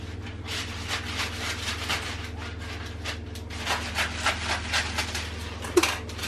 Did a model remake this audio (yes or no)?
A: no